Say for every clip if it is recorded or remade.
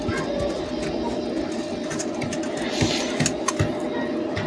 recorded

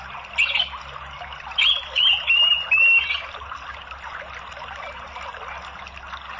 recorded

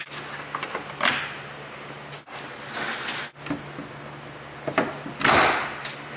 recorded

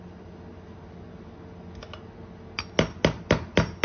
recorded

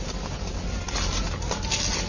recorded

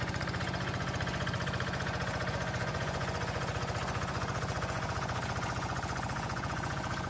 remade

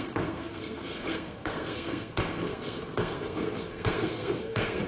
remade